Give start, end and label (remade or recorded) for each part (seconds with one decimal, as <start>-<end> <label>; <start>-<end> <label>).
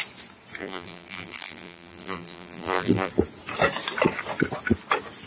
0.0-0.6 recorded; 0.6-3.1 remade; 3.1-5.3 recorded